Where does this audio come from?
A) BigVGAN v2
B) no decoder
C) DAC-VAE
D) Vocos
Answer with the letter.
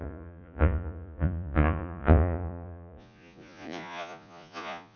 D